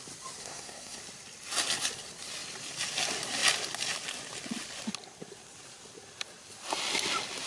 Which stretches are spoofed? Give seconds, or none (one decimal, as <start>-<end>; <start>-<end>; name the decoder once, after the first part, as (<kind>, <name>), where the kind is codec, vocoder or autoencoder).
0.4-1.0 (codec, SNAC)